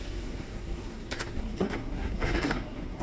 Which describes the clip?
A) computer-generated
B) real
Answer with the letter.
A